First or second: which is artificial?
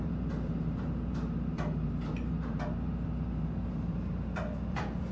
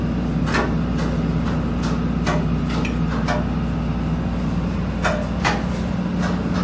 first